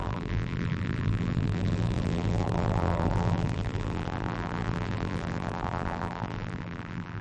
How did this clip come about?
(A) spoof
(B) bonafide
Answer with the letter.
A